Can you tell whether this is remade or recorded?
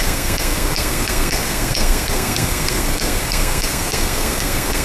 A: remade